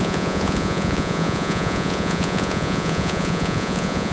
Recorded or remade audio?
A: remade